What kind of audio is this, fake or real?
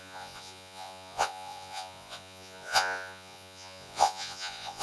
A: fake